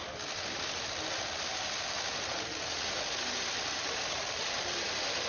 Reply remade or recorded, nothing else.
recorded